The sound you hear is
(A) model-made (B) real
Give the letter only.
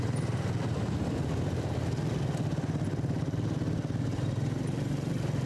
B